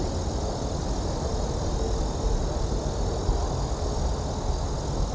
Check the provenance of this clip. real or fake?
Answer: real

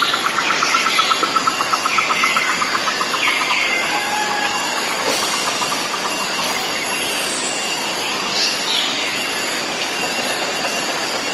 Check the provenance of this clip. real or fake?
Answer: fake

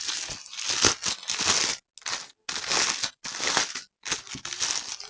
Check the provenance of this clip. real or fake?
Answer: real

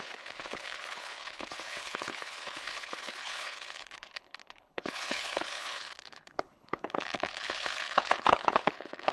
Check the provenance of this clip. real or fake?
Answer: fake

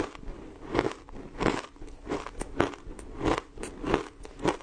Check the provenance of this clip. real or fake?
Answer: real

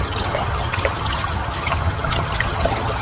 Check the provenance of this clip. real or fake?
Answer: fake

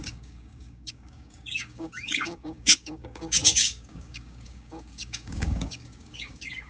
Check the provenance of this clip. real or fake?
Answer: fake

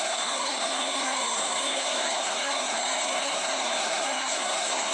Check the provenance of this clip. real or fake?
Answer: fake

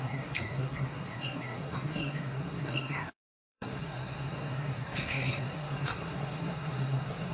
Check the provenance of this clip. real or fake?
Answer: fake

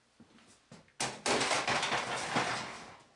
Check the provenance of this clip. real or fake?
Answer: real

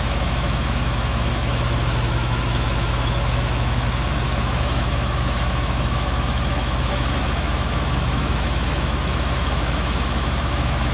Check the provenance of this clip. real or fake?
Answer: fake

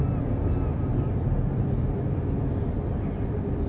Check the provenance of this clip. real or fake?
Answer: real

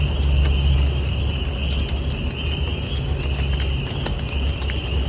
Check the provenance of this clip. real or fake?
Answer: real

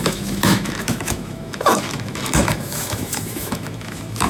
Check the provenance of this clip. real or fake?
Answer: fake